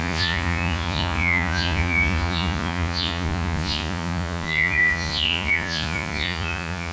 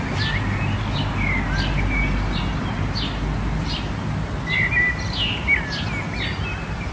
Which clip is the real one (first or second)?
second